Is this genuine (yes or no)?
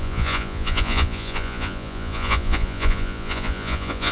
no